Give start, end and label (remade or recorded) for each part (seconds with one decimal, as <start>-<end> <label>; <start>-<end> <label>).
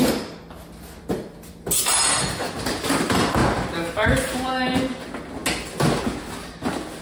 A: 0.0-7.0 recorded